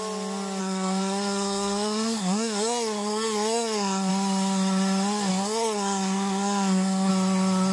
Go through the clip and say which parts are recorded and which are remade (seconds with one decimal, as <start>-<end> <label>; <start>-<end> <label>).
0.0-0.6 recorded; 0.6-4.1 remade; 4.1-5.3 recorded; 5.3-7.1 remade; 7.1-7.7 recorded